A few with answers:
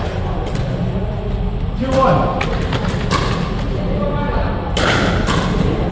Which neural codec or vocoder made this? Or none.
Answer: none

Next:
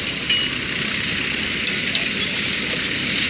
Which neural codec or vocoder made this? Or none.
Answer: none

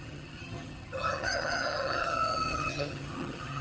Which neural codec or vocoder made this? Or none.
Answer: vocoder, HiFi-GAN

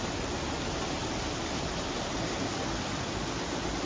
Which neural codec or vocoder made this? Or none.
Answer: none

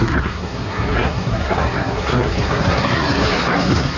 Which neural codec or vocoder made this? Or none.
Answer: codec, SNAC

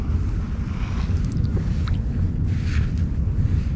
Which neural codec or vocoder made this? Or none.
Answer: none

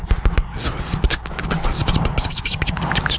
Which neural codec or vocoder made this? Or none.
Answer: none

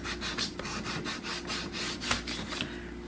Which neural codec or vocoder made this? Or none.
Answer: none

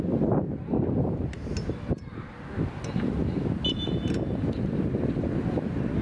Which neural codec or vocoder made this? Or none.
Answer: none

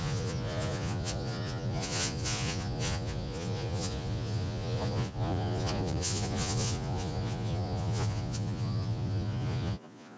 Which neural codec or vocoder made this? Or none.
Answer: vocoder, Vocos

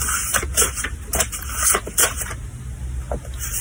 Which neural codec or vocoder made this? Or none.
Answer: none